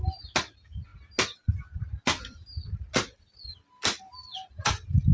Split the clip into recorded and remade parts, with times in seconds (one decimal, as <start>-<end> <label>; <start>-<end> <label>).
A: 0.0-5.1 recorded